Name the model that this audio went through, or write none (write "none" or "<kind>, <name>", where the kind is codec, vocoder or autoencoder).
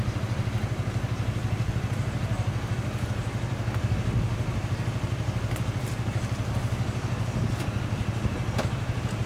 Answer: none